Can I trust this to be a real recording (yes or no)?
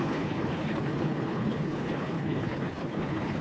no